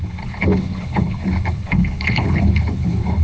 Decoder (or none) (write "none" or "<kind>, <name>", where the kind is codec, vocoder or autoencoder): codec, HILCodec